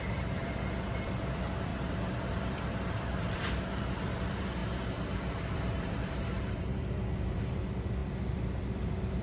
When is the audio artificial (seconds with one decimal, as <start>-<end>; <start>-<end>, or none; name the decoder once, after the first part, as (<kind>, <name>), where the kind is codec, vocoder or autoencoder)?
0.0-4.6 (vocoder, BigVGAN v2); 5.2-9.2